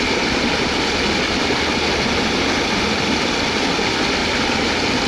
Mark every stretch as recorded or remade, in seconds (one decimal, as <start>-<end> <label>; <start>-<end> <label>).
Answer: 0.0-5.1 recorded